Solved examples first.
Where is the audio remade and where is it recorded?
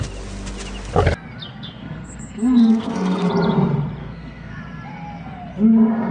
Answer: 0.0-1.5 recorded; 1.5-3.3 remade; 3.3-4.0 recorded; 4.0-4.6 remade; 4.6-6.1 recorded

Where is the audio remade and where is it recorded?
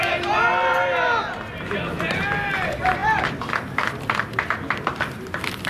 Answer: 0.0-5.7 recorded